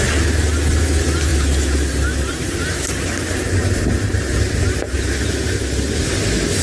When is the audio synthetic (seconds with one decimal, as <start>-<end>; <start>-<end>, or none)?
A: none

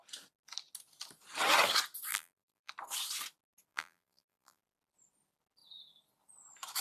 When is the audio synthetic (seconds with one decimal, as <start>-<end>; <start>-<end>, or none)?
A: 2.1-2.7; 3.7-4.6

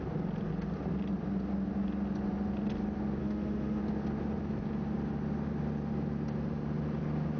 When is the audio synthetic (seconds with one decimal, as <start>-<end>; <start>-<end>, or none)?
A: 3.2-3.8

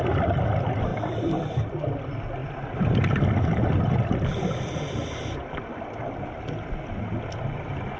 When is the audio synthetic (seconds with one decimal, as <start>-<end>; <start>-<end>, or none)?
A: none

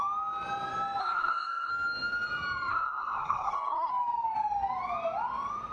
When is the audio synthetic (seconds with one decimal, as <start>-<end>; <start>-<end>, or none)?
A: 1.0-1.7; 2.7-3.9

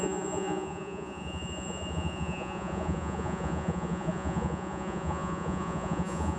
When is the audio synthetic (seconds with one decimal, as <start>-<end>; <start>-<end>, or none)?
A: 0.0-6.4

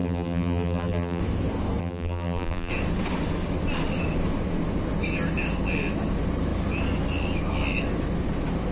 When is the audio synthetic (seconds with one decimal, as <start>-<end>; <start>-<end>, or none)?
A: 0.0-1.2; 1.8-2.7

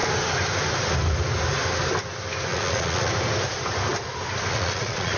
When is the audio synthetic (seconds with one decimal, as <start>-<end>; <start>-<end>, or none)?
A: 2.5-3.1; 4.5-5.2